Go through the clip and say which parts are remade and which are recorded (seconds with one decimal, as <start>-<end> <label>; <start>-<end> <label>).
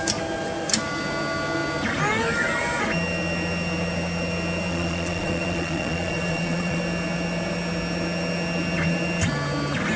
0.0-4.7 recorded; 4.7-6.8 remade; 6.8-10.0 recorded